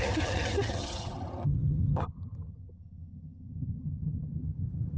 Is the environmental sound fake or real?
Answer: fake